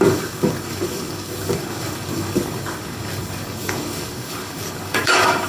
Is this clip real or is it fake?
fake